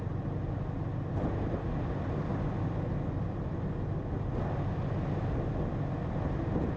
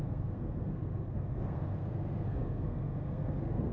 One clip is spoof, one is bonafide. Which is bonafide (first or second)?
first